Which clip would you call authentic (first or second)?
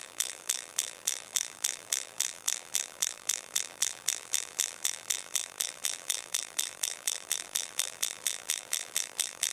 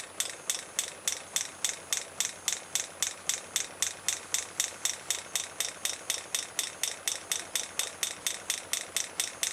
second